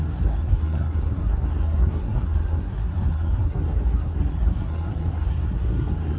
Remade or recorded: remade